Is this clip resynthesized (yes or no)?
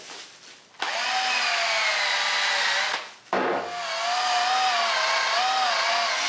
no